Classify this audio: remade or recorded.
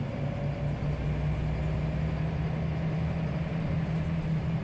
recorded